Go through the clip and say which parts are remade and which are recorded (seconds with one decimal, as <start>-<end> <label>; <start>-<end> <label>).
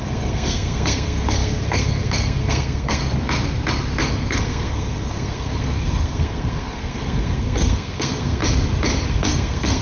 0.0-3.0 remade; 3.0-4.1 recorded; 4.1-8.4 remade; 8.4-9.1 recorded; 9.1-9.8 remade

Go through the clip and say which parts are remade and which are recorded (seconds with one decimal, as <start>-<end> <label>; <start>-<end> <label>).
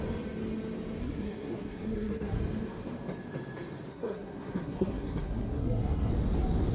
0.0-1.0 recorded; 1.0-2.4 remade; 2.4-3.9 recorded; 3.9-6.1 remade; 6.1-6.7 recorded